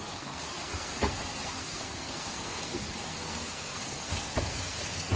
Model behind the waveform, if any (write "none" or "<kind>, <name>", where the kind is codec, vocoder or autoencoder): codec, SNAC